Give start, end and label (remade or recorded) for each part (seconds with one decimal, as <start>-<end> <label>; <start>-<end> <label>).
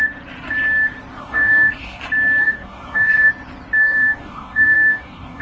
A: 0.0-1.2 recorded; 1.2-2.0 remade; 2.0-2.4 recorded; 2.4-3.3 remade; 3.3-3.8 recorded; 3.8-5.4 remade